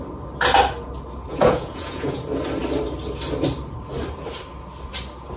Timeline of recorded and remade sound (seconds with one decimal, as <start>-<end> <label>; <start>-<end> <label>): 0.0-1.3 recorded; 1.3-2.2 remade; 2.2-5.4 recorded